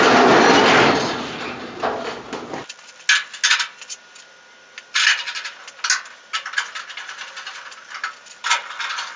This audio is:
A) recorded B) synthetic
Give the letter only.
A